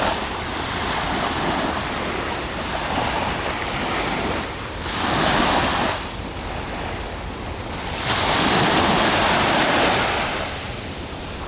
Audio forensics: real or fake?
real